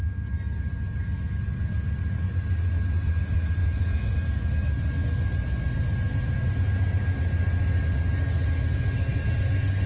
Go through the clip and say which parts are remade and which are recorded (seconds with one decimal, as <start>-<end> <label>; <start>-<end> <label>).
0.0-3.6 recorded; 3.6-4.1 remade; 4.1-9.9 recorded